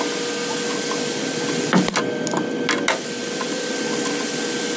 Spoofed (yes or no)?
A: no